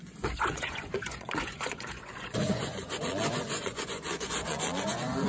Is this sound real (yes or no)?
no